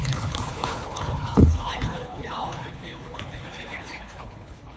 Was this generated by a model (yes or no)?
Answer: yes